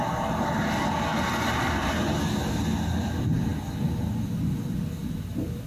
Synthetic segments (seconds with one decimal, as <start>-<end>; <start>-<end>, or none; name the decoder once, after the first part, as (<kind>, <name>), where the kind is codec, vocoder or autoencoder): none